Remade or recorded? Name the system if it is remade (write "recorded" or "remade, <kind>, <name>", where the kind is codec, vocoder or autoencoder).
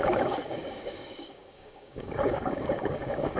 remade, codec, DAC